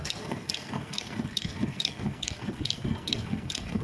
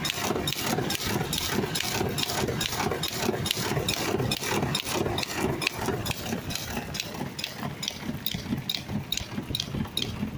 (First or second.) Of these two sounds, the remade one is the first